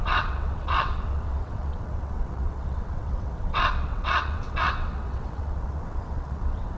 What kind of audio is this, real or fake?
fake